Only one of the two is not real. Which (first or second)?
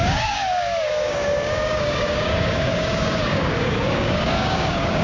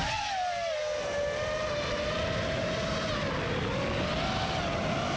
first